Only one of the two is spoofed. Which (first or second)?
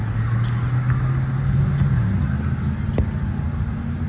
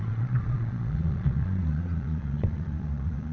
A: second